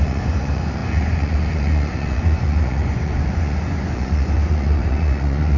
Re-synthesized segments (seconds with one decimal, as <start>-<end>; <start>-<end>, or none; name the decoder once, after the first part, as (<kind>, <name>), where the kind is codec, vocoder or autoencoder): 0.0-5.6 (vocoder, Vocos)